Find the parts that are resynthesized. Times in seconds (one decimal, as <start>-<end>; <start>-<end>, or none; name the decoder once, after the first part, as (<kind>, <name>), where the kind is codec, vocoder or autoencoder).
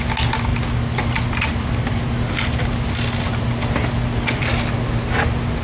none